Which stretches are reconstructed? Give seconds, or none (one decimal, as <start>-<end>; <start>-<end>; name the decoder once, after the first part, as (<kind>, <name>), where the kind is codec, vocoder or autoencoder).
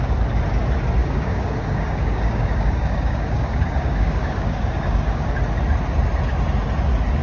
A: 1.0-5.3 (codec, DAC)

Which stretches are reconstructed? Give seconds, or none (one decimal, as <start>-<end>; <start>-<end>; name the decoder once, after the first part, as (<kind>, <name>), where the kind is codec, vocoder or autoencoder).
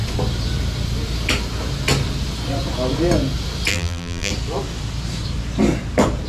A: 3.7-4.3 (vocoder, BigVGAN v2)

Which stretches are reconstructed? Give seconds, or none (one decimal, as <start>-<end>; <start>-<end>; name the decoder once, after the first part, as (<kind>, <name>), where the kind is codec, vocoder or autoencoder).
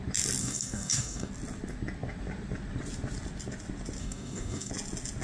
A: 0.4-1.3 (codec, DAC); 4.0-4.7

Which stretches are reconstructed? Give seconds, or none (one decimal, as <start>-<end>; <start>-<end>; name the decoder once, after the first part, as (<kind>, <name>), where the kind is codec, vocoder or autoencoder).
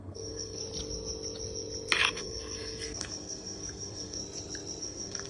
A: 0.0-0.6 (codec, SNAC); 2.1-4.2; 4.8-5.3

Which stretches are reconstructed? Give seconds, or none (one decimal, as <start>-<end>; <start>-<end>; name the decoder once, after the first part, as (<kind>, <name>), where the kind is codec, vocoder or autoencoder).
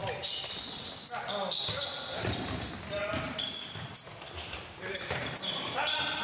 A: 4.1-6.2 (vocoder, BigVGAN v2)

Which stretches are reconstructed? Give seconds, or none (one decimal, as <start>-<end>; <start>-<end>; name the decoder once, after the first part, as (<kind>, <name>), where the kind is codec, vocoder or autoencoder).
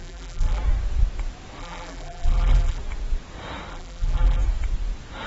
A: 0.0-0.6 (vocoder, BigVGAN v2); 1.6-2.8; 3.7-4.4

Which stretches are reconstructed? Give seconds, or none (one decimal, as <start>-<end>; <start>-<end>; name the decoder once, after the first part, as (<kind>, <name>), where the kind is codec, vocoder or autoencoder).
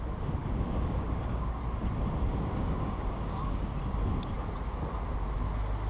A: 0.4-1.6 (codec, DAC); 2.3-3.7